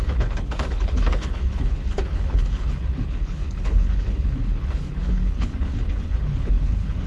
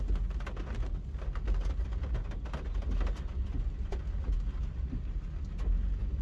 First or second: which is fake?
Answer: first